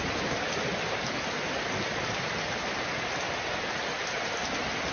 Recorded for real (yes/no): yes